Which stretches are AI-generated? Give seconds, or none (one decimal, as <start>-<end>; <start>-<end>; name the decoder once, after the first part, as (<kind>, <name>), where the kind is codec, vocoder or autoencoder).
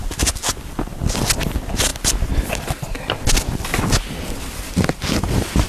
none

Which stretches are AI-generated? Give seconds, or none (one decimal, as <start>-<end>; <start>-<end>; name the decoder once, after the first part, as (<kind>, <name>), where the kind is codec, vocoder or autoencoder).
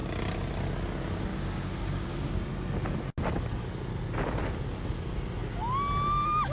1.3-2.3 (codec, DAC)